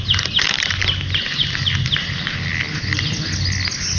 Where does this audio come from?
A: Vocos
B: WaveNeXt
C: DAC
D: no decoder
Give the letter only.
D